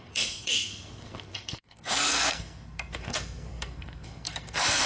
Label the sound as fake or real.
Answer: fake